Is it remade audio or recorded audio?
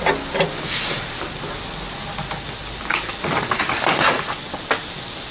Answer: recorded